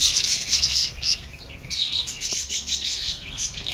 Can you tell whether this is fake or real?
fake